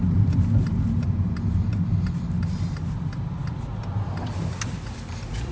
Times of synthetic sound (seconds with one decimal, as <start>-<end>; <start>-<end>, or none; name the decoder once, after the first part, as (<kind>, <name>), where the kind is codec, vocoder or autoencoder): none